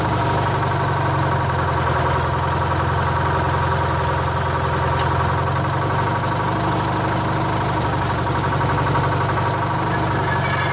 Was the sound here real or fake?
real